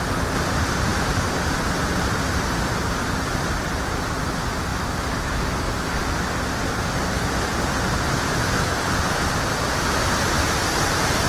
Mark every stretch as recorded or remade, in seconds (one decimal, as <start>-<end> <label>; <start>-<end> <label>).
0.0-11.3 recorded